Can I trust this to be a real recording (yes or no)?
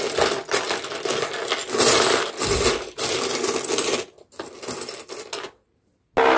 yes